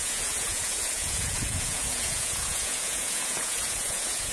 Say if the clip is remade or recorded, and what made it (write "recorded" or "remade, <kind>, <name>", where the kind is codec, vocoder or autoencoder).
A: remade, vocoder, Vocos